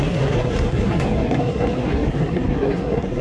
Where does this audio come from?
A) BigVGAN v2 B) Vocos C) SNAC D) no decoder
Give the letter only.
C